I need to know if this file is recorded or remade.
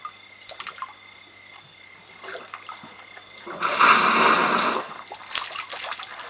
recorded